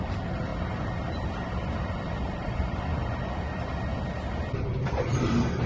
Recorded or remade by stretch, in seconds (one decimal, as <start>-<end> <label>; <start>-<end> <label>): 0.0-0.5 remade; 0.5-2.0 recorded; 2.0-2.9 remade; 2.9-4.9 recorded; 4.9-5.7 remade